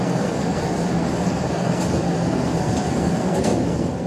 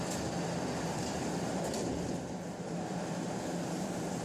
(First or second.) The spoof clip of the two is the first